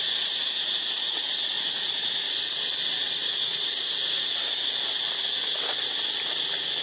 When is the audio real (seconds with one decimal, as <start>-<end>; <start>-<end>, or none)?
0.0-6.8